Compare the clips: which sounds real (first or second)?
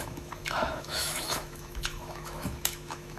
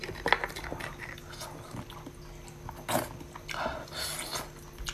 second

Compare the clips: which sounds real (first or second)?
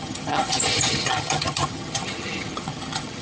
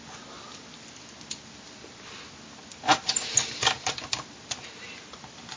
second